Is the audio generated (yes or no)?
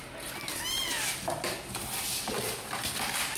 no